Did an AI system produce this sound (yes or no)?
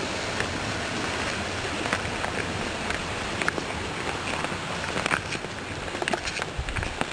no